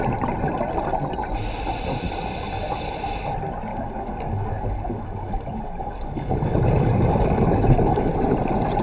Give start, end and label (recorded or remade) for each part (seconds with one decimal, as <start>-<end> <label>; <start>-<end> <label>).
0.0-3.7 recorded; 3.7-8.1 remade; 8.1-8.8 recorded